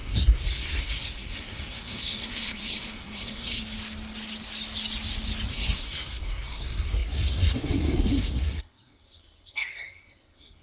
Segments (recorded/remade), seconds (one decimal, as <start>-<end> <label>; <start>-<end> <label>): 0.0-3.6 remade; 3.6-5.5 recorded; 5.5-10.6 remade

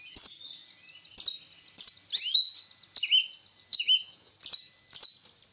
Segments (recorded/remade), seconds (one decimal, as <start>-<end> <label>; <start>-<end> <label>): 0.0-3.7 recorded; 3.7-4.3 remade; 4.3-5.5 recorded